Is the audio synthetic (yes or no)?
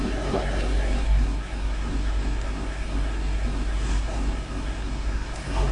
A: yes